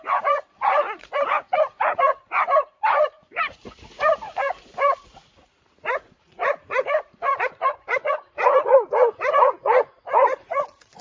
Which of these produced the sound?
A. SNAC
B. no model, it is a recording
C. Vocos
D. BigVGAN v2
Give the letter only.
C